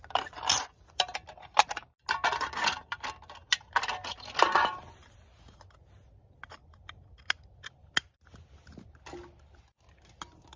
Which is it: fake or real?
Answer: real